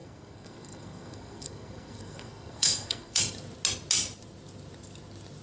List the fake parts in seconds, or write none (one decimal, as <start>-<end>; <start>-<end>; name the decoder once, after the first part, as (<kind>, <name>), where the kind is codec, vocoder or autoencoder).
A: 0.0-3.2 (codec, SNAC)